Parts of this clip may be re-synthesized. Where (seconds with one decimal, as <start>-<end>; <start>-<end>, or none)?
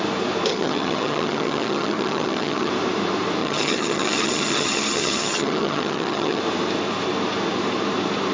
0.5-2.7; 3.4-6.4